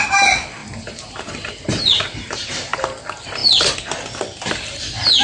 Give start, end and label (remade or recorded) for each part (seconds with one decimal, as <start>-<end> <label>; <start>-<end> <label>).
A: 0.0-0.6 recorded; 0.6-2.8 remade; 2.8-5.2 recorded